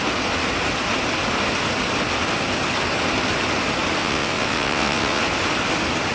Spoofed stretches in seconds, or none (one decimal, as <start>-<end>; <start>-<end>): 4.0-5.2